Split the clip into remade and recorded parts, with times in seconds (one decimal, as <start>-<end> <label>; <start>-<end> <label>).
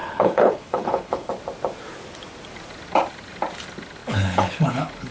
0.0-1.3 remade; 1.3-4.0 recorded; 4.0-5.1 remade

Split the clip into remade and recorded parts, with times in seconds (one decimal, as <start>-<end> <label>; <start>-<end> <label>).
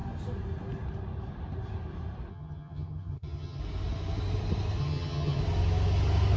0.0-2.3 recorded; 2.3-3.6 remade; 3.6-4.8 recorded; 4.8-5.4 remade; 5.4-6.4 recorded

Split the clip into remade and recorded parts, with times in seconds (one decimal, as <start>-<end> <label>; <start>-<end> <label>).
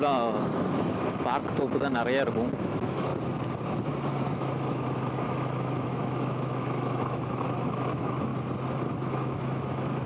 0.0-1.4 remade; 1.4-2.3 recorded; 2.3-3.1 remade; 3.1-4.2 recorded; 4.2-8.3 remade; 8.3-8.9 recorded; 8.9-10.1 remade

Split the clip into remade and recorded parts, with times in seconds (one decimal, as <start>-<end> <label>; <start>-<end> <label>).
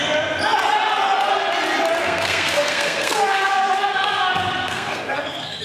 0.0-2.0 recorded; 2.0-5.6 remade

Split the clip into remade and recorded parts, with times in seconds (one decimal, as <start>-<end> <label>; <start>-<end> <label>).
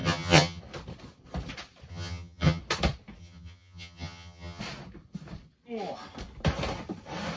0.0-0.6 remade; 0.6-1.9 recorded; 1.9-2.6 remade; 2.6-3.2 recorded; 3.2-4.6 remade; 4.6-7.4 recorded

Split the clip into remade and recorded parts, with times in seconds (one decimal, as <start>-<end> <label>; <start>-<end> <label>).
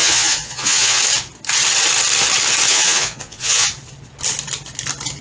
0.0-1.0 remade; 1.0-2.7 recorded; 2.7-3.7 remade; 3.7-5.2 recorded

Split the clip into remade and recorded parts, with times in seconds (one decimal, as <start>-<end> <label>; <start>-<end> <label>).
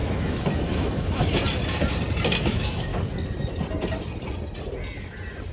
0.0-1.4 remade; 1.4-2.4 recorded; 2.4-2.9 remade; 2.9-5.5 recorded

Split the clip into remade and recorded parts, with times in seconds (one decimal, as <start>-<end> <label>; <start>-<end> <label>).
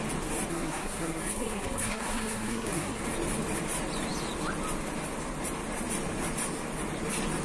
0.0-0.5 recorded; 0.5-3.0 remade; 3.0-7.4 recorded